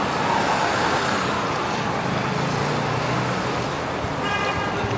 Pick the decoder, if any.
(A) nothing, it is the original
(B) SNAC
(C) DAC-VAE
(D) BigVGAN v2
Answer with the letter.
A